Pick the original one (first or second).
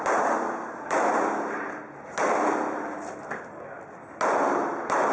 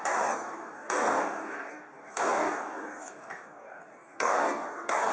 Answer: first